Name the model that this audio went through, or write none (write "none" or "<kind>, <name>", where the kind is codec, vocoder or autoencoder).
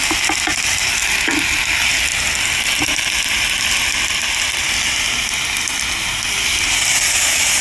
none